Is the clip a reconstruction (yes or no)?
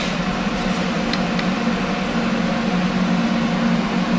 no